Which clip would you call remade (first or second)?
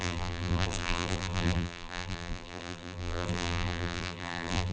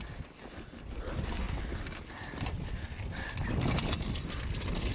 first